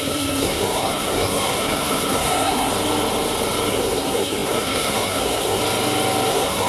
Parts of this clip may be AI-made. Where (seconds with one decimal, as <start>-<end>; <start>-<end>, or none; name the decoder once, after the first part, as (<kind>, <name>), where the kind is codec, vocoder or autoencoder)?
0.0-2.7 (codec, SNAC); 3.7-5.6; 6.3-6.7

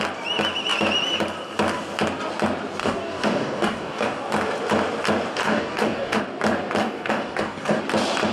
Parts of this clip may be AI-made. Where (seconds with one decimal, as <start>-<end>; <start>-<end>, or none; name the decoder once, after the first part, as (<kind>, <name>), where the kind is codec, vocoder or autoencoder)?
2.8-4.2 (codec, DAC); 5.4-6.2; 6.8-7.8

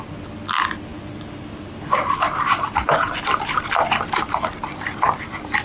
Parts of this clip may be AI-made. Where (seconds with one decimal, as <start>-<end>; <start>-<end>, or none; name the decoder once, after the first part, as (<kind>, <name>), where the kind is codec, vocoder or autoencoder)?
none

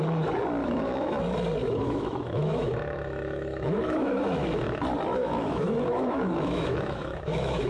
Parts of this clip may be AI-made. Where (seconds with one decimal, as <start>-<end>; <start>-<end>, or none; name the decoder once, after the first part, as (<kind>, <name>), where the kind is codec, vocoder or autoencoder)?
0.6-1.2 (autoencoder, DAC-VAE); 1.6-4.8; 5.2-7.7

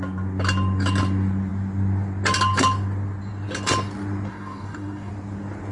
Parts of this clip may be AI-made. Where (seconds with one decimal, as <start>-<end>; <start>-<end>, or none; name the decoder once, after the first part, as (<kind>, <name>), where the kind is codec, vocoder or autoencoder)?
4.3-5.1 (codec, DAC)

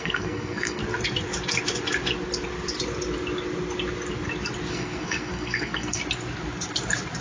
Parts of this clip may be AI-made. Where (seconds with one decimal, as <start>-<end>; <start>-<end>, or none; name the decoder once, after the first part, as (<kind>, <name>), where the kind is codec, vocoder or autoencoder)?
0.0-0.8 (codec, SNAC); 4.7-6.0